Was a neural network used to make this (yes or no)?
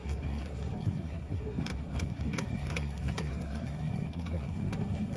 yes